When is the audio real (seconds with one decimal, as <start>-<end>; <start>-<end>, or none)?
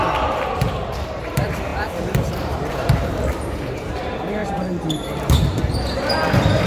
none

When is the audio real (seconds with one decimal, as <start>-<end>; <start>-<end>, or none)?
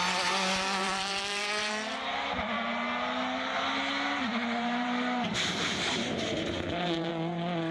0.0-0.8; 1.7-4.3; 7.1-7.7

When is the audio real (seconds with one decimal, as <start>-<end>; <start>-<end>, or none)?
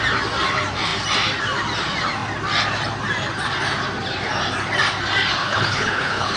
0.0-5.4